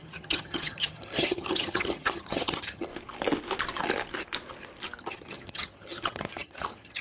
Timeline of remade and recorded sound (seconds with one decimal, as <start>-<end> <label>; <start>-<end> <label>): 0.0-2.9 remade; 2.9-5.0 recorded; 5.0-7.0 remade